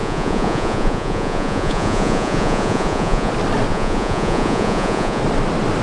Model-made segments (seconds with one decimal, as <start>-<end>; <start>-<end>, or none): 0.0-3.3; 3.7-5.2